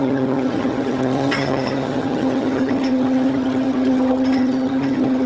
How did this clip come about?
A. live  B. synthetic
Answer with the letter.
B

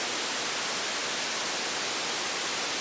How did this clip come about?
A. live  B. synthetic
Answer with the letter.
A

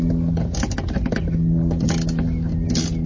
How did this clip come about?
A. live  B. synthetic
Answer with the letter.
A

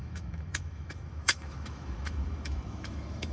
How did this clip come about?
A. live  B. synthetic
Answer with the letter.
B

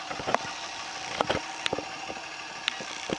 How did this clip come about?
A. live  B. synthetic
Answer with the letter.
A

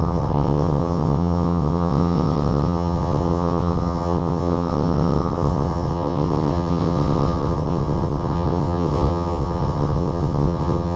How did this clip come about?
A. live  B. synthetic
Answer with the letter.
B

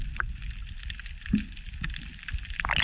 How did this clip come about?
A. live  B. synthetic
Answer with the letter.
A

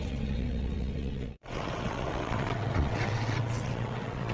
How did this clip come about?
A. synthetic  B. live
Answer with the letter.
A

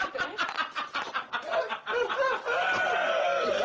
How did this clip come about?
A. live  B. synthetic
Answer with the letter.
A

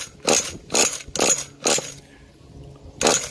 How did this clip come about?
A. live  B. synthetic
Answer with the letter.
A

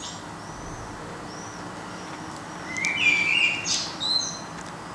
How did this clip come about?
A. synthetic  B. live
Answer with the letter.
B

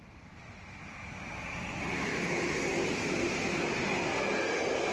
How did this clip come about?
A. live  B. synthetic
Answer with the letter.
A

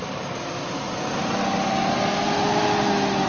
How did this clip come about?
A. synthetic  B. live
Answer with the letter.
B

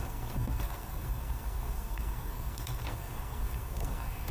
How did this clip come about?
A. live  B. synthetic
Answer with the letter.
B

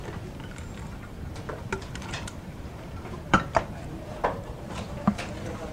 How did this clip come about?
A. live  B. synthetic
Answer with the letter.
B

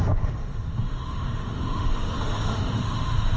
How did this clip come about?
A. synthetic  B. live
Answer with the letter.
A